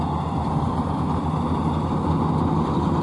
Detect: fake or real real